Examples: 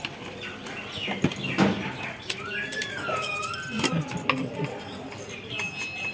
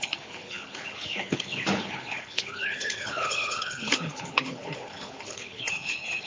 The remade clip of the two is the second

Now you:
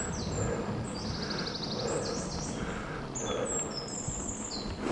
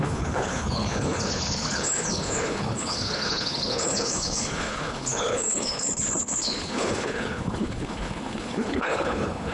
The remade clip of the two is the second